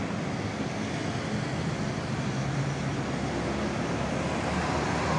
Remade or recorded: recorded